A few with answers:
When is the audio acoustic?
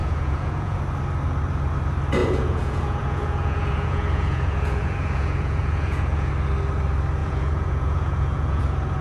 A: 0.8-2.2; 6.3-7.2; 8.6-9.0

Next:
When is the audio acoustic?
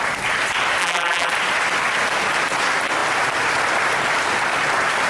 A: 0.0-0.8; 1.3-5.1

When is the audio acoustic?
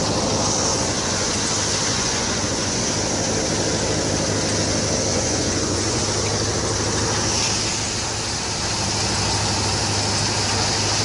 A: 0.0-0.7; 1.4-1.9; 2.8-5.1; 6.0-11.0